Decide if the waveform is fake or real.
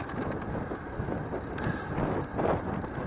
real